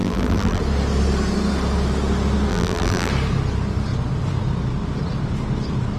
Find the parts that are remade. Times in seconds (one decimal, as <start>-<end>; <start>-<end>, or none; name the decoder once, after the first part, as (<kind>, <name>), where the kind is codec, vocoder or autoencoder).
0.0-0.6 (vocoder, BigVGAN v2); 2.5-3.1